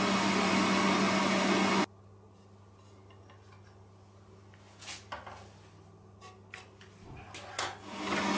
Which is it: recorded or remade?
recorded